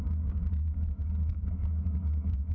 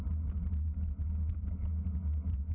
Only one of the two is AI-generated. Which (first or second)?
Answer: first